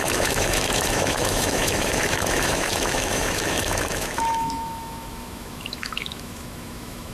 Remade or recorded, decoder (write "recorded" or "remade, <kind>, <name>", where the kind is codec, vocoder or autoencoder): remade, autoencoder, DAC-VAE